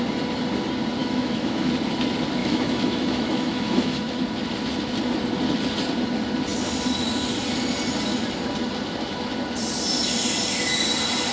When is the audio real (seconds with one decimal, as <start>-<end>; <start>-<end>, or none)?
0.0-1.0; 1.7-2.4; 4.1-11.3